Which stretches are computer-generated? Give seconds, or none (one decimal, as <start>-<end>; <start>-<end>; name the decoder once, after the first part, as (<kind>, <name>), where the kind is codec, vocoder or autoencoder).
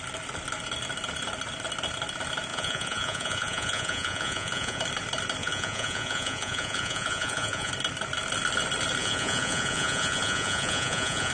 2.5-4.8 (vocoder, Vocos); 5.4-7.7; 9.0-11.3